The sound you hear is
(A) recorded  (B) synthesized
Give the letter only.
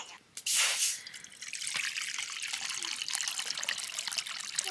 A